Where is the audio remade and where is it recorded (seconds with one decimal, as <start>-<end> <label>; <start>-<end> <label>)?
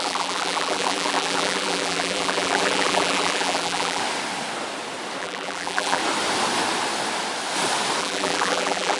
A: 0.0-4.0 remade; 4.0-5.2 recorded; 5.2-6.0 remade; 6.0-8.0 recorded; 8.0-9.0 remade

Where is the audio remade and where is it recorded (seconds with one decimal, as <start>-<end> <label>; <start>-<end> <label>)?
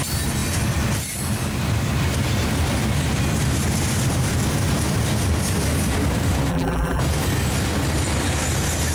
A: 0.0-6.5 recorded; 6.5-7.0 remade; 7.0-8.9 recorded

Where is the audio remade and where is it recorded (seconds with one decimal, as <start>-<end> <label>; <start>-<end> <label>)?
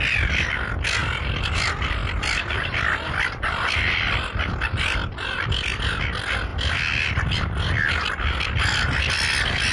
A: 0.0-1.0 recorded; 1.0-6.0 remade; 6.0-9.7 recorded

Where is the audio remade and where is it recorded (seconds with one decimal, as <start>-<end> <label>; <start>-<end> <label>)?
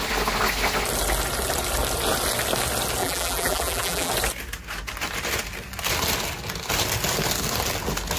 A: 0.0-3.0 recorded; 3.0-4.1 remade; 4.1-8.2 recorded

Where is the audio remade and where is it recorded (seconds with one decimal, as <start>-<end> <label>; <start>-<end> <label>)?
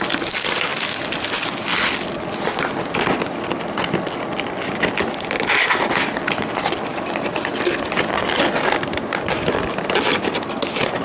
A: 0.0-6.9 recorded; 6.9-7.5 remade; 7.5-11.0 recorded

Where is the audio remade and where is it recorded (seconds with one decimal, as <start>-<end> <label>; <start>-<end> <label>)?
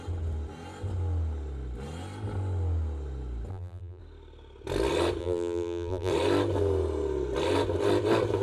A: 0.0-3.5 recorded; 3.5-4.0 remade; 4.0-5.2 recorded; 5.2-6.1 remade; 6.1-8.4 recorded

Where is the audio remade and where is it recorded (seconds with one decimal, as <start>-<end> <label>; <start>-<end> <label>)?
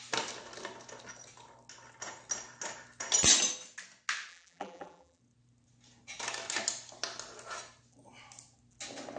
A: 0.0-4.3 recorded; 4.3-5.2 remade; 5.2-9.2 recorded